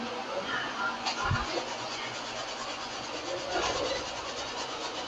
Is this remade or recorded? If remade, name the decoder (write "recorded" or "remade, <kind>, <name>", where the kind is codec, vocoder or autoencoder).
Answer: remade, vocoder, Vocos